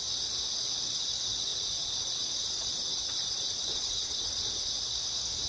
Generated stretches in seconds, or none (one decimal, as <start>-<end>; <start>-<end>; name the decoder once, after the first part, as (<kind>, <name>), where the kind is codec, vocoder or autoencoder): 1.5-4.7 (vocoder, Vocos)